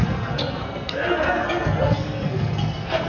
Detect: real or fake fake